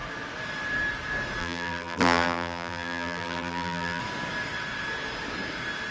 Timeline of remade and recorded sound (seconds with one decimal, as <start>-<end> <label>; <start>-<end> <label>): 0.0-1.4 recorded; 1.4-4.0 remade; 4.0-5.9 recorded